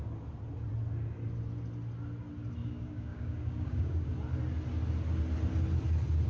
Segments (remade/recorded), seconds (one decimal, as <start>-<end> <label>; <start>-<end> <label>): 0.0-2.6 recorded; 2.6-4.1 remade; 4.1-6.3 recorded